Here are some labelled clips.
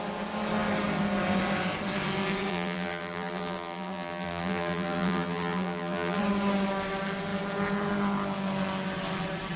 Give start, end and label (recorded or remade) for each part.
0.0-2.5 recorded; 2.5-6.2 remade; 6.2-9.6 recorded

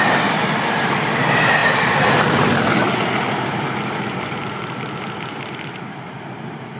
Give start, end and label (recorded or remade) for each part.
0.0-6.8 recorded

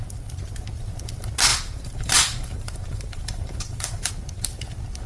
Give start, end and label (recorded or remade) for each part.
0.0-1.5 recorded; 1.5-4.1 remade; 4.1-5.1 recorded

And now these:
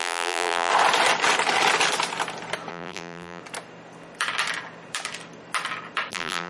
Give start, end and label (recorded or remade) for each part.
0.0-0.7 remade; 0.7-2.7 recorded; 2.7-3.4 remade; 3.4-6.1 recorded; 6.1-6.5 remade